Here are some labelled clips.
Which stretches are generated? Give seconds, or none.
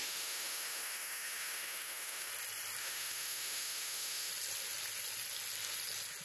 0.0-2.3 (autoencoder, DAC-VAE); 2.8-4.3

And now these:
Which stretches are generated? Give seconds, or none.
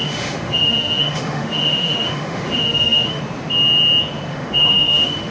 0.0-3.2 (autoencoder, DAC-VAE); 4.3-5.3